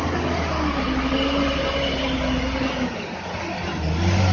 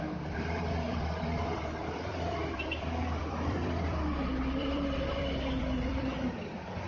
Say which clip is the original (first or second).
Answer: first